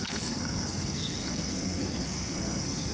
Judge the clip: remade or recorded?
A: remade